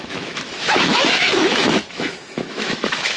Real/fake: fake